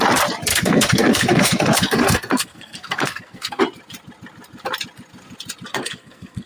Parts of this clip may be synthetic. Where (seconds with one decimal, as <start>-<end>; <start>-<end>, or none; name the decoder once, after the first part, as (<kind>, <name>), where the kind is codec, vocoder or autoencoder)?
0.5-3.6 (codec, SNAC); 5.7-6.5